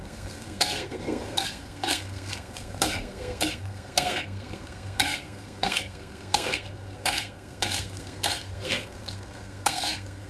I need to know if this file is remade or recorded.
remade